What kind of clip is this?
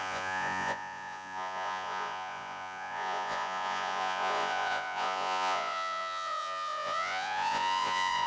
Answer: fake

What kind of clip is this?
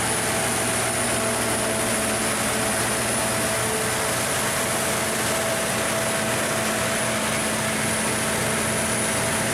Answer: real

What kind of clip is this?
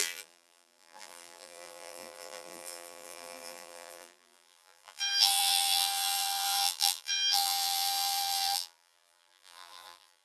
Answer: fake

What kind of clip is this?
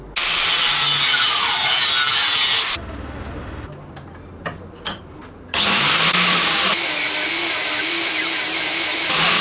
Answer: real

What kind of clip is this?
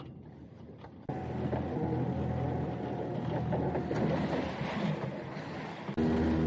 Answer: real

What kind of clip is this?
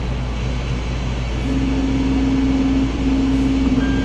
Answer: real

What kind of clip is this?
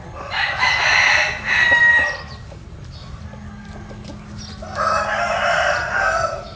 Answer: real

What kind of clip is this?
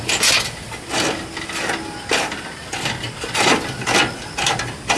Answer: real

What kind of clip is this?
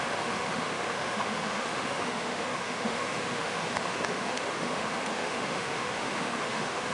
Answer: fake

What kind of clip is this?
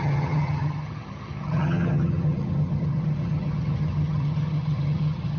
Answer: fake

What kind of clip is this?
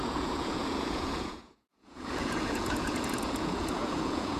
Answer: fake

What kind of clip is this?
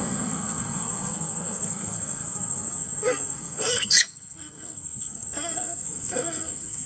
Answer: fake